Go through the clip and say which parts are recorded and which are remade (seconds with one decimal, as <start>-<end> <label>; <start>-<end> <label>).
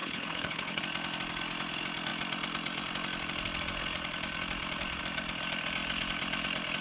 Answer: 0.0-0.8 remade; 0.8-6.8 recorded